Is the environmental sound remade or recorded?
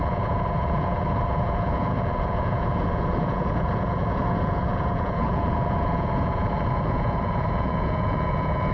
remade